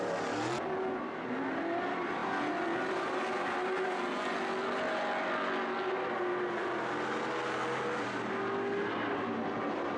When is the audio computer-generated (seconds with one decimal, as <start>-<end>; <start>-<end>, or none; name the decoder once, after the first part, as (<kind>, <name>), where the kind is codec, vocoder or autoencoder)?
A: none